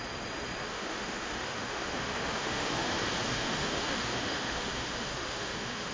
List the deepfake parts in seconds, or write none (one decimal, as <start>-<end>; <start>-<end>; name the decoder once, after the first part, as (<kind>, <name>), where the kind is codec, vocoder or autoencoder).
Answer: 0.7-2.9 (autoencoder, DAC-VAE); 3.3-5.9